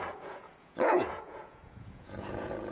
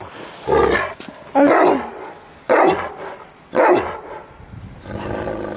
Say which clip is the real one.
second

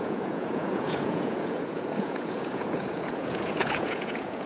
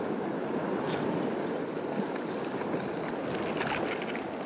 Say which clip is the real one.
second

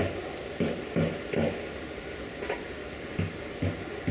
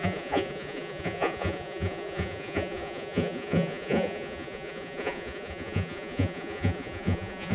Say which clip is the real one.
first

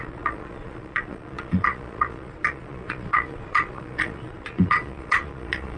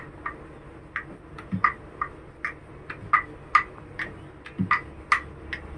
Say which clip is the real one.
second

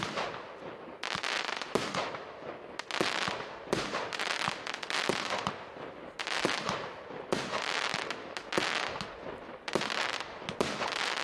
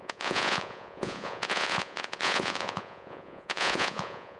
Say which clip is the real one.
first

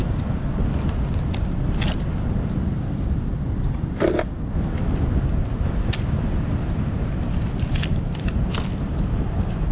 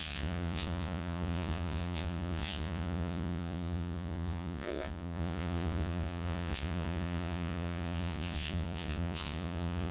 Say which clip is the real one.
first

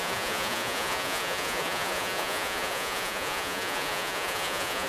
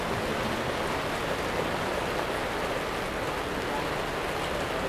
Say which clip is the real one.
second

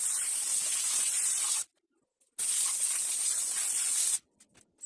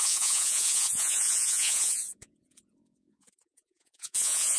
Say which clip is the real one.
first